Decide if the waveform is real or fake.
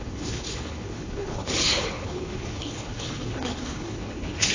fake